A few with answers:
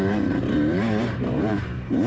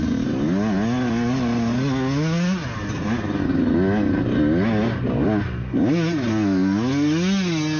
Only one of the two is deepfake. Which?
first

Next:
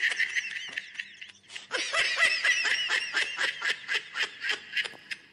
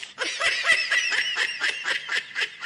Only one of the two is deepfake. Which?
second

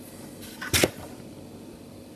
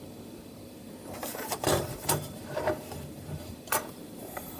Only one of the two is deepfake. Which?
second